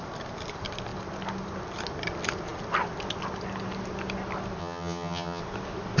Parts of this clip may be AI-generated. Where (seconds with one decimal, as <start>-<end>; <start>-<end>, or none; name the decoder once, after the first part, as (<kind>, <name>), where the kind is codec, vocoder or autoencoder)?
4.6-5.4 (vocoder, HiFi-GAN)